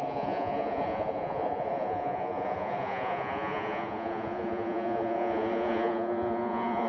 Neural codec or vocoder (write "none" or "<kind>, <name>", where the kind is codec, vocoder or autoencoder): vocoder, Vocos